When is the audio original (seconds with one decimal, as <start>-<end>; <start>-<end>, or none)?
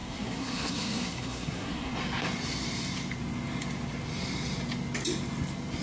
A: 1.9-5.8